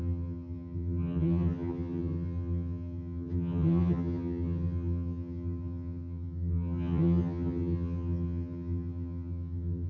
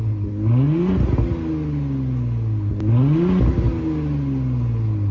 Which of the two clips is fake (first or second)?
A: first